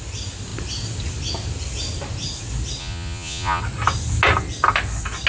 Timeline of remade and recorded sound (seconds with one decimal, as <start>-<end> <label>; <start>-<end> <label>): 0.0-2.8 recorded; 2.8-3.6 remade; 3.6-5.3 recorded